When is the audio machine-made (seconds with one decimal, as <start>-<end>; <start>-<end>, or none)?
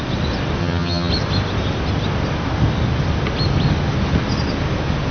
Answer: 0.6-1.1